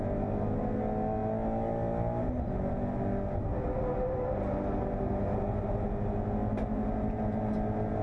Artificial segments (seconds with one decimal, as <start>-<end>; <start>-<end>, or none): none